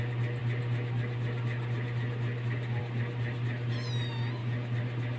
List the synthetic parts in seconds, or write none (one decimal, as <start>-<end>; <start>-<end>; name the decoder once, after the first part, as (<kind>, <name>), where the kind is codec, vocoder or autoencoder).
none